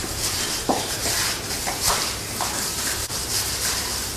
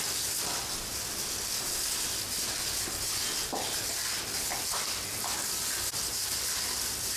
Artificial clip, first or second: first